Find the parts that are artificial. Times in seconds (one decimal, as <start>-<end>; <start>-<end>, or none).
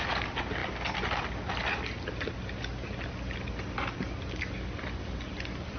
none